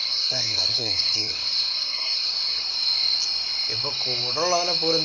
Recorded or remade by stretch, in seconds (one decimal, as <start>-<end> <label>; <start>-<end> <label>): 0.0-2.6 remade; 2.6-5.0 recorded